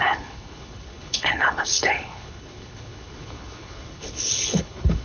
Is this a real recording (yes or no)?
no